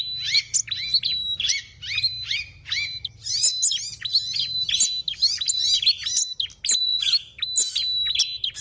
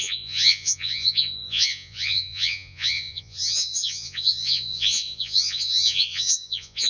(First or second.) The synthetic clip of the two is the second